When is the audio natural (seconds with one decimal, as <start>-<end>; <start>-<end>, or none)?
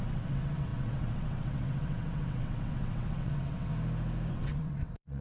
3.7-4.3